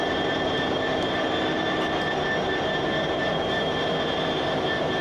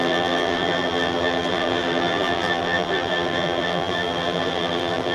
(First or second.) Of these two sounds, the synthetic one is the second